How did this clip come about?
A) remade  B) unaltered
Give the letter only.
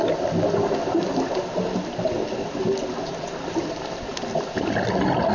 B